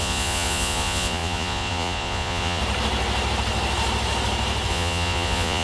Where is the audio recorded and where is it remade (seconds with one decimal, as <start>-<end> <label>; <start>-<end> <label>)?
0.0-2.6 remade; 2.6-4.7 recorded; 4.7-5.6 remade